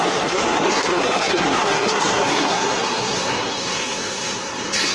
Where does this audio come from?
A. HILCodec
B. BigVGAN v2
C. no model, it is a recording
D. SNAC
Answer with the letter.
D